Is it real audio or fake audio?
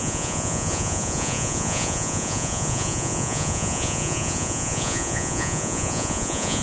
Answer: fake